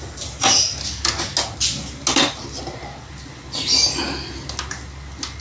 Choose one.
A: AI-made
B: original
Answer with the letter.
B